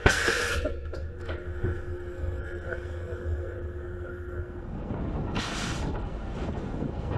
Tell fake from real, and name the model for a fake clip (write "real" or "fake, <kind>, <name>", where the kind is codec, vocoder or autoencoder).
fake, codec, SNAC